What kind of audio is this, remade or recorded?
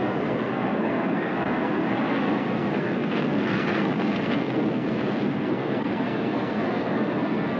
remade